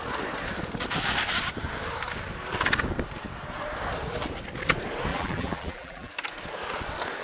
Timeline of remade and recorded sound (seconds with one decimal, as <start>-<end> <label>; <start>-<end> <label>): 0.0-5.1 recorded; 5.1-6.1 remade; 6.1-7.2 recorded